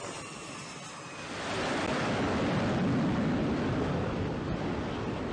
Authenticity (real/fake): real